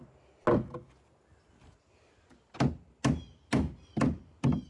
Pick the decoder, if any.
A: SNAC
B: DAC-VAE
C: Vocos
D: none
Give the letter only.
D